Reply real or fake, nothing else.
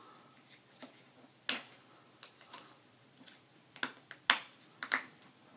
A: real